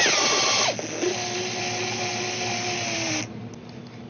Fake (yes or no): no